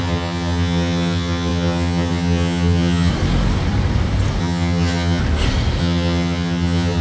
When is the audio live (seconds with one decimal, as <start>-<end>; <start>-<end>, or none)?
3.1-4.4; 5.2-5.8